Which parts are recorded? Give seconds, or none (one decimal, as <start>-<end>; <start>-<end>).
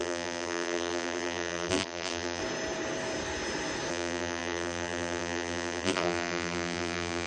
2.4-3.9